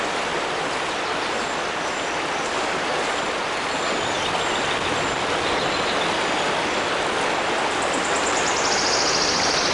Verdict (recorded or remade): recorded